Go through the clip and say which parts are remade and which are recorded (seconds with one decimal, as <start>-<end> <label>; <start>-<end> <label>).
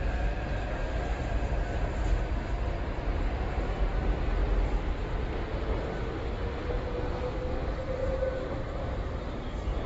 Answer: 0.0-1.1 recorded; 1.1-1.7 remade; 1.7-8.0 recorded; 8.0-9.3 remade; 9.3-9.9 recorded